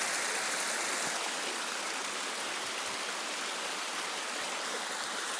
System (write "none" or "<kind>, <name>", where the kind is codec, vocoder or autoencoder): none